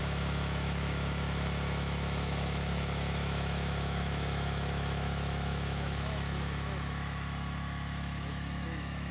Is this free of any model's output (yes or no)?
no